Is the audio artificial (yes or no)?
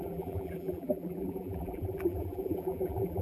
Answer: yes